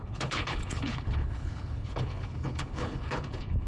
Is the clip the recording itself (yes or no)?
no